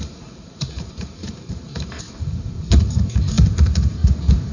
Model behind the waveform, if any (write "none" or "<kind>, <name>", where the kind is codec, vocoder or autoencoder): vocoder, BigVGAN v2